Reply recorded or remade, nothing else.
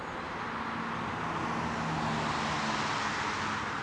recorded